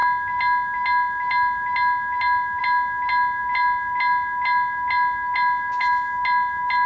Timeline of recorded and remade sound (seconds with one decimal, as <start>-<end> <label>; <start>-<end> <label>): 0.0-6.9 recorded